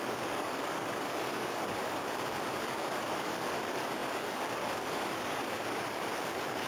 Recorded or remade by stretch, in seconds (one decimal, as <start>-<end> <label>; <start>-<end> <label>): 0.0-6.7 remade